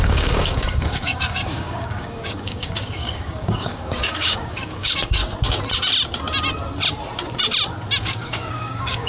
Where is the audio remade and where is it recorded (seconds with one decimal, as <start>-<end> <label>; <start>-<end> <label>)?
0.0-5.2 remade; 5.2-8.0 recorded; 8.0-9.1 remade